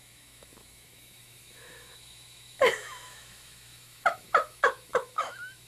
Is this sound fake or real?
fake